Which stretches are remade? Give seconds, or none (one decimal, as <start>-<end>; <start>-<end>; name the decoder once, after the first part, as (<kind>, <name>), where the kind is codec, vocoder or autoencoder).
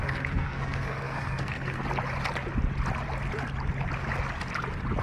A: 0.0-1.8 (codec, SNAC)